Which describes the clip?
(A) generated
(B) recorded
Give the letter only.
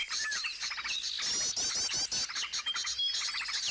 B